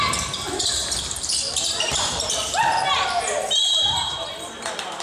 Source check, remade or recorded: remade